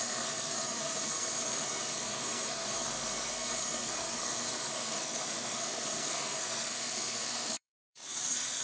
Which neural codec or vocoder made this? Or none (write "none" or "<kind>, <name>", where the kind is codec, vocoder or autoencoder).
codec, SNAC